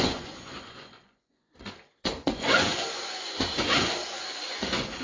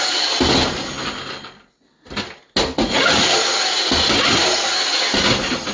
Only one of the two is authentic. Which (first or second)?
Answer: second